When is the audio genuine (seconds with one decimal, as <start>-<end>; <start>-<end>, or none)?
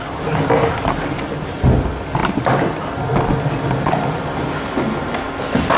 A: 0.0-5.8